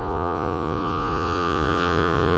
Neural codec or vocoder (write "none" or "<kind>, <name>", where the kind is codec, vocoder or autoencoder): vocoder, Vocos